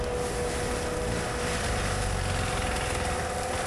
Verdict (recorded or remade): recorded